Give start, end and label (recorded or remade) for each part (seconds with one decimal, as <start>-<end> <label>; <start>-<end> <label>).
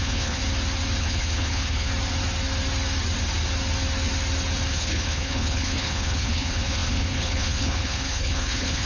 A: 0.0-0.4 remade; 0.4-1.0 recorded; 1.0-1.9 remade; 1.9-4.7 recorded; 4.7-8.9 remade